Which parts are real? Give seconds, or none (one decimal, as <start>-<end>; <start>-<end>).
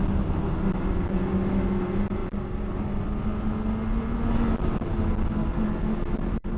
0.0-6.6